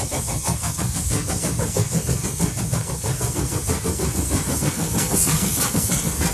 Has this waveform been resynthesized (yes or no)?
yes